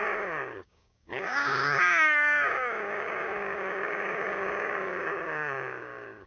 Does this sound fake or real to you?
fake